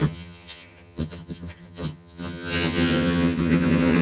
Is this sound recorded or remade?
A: remade